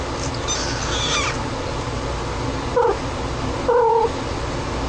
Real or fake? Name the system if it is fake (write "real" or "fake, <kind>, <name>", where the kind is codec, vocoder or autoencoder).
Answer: real